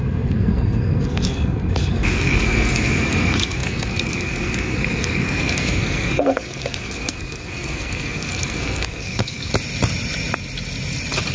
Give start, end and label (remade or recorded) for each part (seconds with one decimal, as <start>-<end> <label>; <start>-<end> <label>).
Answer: 0.0-9.5 remade; 9.5-11.3 recorded